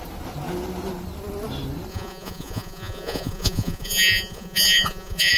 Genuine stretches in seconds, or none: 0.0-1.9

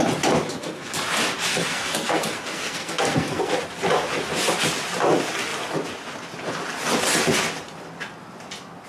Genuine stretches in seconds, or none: 0.0-0.5; 1.0-1.5; 3.5-8.9

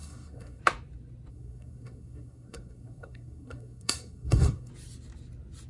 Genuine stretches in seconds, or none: 0.6-1.3; 4.7-5.7

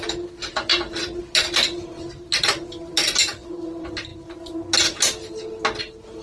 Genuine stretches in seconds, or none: 0.0-6.2

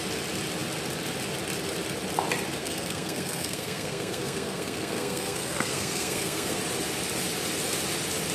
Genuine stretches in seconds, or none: 0.0-2.6; 6.6-8.3

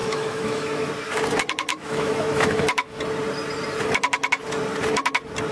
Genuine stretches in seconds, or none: 0.9-1.7; 3.0-5.5